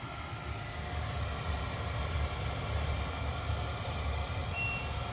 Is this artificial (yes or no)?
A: no